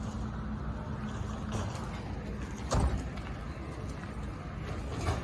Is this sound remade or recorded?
recorded